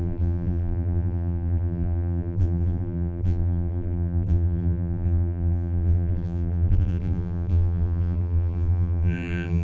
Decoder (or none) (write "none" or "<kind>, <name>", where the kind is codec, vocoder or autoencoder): vocoder, BigVGAN v2